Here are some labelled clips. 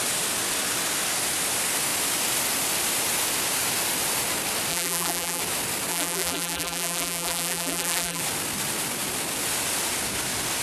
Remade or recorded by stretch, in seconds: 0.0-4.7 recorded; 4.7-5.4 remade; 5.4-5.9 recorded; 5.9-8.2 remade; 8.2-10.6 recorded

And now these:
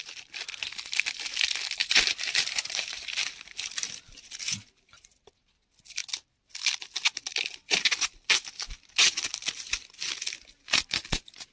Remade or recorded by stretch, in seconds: 0.0-1.8 recorded; 1.8-3.0 remade; 3.0-11.5 recorded

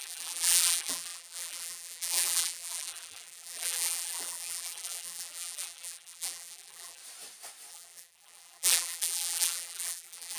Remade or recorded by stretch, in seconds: 0.0-7.0 remade; 7.0-7.7 recorded; 7.7-10.4 remade

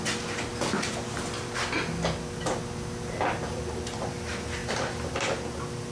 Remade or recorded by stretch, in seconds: 0.0-5.9 recorded

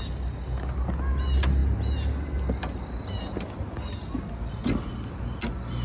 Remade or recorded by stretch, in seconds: 0.0-5.8 recorded

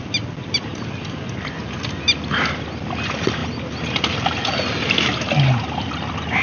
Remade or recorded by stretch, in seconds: 0.0-6.4 recorded

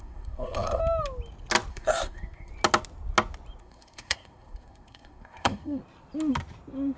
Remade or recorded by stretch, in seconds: 0.0-0.8 remade; 0.8-1.7 recorded; 1.7-2.5 remade; 2.5-3.6 recorded; 3.6-5.8 remade; 5.8-7.0 recorded

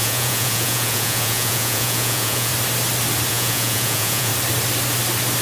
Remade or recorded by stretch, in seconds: 0.0-2.5 remade; 2.5-3.3 recorded; 3.3-4.3 remade; 4.3-5.4 recorded